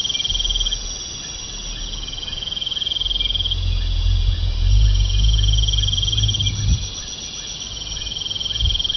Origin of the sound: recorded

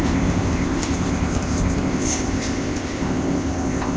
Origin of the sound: remade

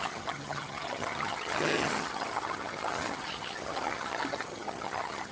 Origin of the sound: remade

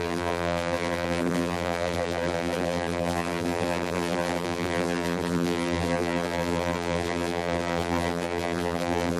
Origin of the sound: remade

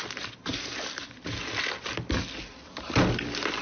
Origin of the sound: recorded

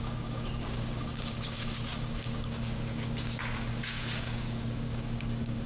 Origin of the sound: remade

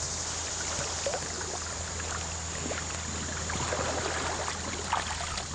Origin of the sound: recorded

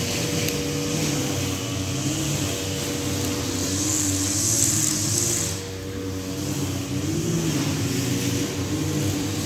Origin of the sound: recorded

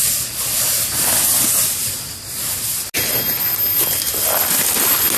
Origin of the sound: recorded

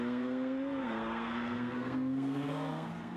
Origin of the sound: remade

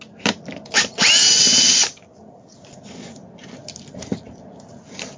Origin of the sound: recorded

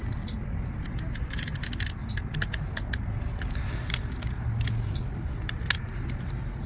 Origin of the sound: recorded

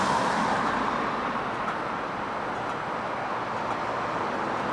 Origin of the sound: recorded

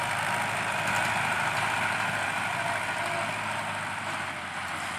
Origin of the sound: remade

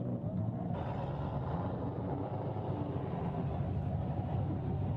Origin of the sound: recorded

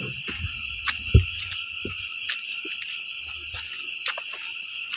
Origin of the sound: recorded